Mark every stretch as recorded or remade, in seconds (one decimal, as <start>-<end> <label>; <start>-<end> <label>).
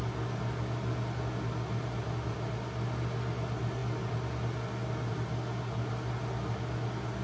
0.0-7.2 recorded